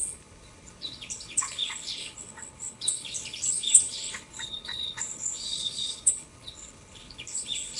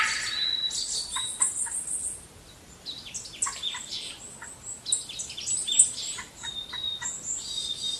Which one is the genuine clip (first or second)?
second